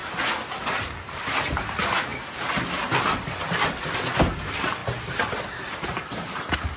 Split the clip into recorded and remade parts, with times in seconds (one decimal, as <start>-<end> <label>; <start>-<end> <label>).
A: 0.0-6.8 recorded